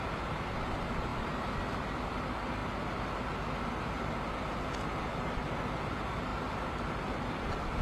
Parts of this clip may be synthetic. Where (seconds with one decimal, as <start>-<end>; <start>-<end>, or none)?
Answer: none